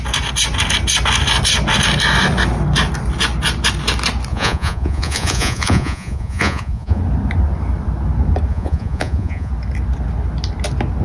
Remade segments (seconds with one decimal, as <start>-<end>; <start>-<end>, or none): 4.3-7.0; 8.5-9.5